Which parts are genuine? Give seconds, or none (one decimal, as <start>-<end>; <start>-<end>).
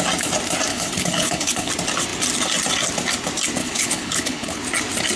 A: 0.0-0.7; 1.7-3.6; 4.6-5.2